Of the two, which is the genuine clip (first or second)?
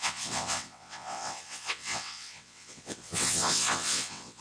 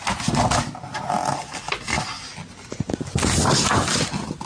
second